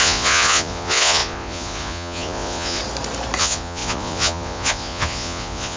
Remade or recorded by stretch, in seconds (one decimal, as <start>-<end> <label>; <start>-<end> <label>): 0.0-2.8 remade; 2.8-3.4 recorded; 3.4-5.8 remade